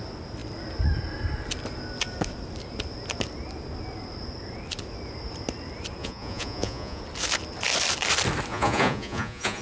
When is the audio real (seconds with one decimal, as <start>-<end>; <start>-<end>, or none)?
0.0-6.0; 7.0-8.5